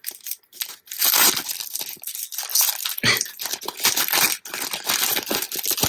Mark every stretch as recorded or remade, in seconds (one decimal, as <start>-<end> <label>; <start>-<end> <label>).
0.0-5.9 recorded